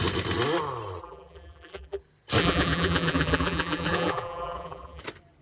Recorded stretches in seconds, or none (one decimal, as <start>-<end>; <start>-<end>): 0.0-1.0; 2.0-2.4; 5.0-5.4